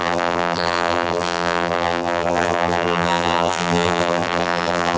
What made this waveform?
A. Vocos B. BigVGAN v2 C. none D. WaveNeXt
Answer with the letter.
B